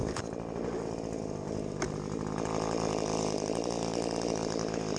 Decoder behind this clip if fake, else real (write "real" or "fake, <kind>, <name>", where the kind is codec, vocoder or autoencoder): real